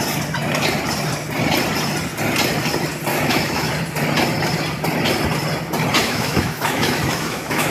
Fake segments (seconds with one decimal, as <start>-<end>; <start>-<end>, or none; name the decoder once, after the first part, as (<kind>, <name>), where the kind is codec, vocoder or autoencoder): 3.1-3.7 (autoencoder, DAC-VAE); 6.0-7.7

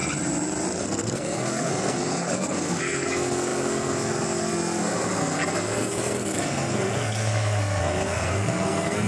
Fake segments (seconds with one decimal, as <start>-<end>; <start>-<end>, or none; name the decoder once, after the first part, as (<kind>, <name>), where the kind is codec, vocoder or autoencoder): 0.8-9.1 (codec, SNAC)

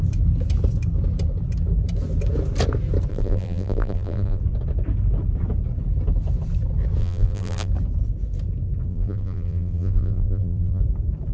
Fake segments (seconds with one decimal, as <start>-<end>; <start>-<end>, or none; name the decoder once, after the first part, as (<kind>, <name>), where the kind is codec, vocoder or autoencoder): 3.1-4.4 (vocoder, BigVGAN v2); 7.0-7.7; 8.9-10.8

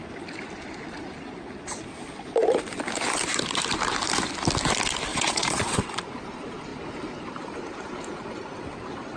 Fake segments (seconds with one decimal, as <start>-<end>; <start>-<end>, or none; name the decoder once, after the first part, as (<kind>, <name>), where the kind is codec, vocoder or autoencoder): 5.1-6.0 (vocoder, Vocos)